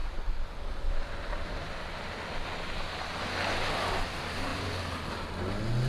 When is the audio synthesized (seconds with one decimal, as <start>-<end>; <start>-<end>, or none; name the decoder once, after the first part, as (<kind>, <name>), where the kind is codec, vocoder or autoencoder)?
none